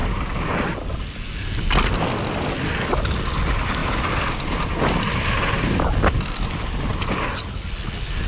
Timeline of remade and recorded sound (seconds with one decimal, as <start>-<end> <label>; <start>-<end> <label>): 0.0-8.3 recorded